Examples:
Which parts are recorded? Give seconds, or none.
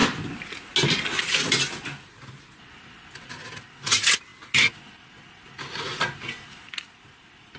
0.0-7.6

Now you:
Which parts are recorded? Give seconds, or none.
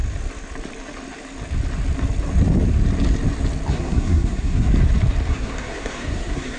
0.0-3.7; 4.7-5.3